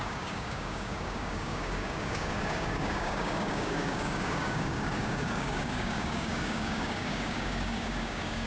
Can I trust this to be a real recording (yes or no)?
no